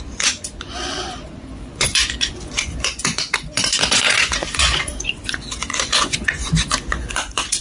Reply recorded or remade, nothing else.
remade